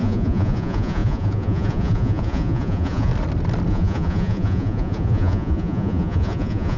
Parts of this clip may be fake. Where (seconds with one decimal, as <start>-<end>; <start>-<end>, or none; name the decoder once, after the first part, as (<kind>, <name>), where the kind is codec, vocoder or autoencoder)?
0.0-3.1 (vocoder, Vocos); 3.7-6.8